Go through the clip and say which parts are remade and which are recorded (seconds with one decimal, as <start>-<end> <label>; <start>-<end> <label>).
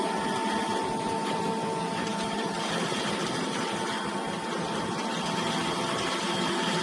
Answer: 0.0-6.8 recorded